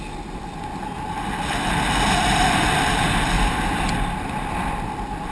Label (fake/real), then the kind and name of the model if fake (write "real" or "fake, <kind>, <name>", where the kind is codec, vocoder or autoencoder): real